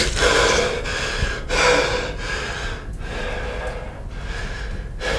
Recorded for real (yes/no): yes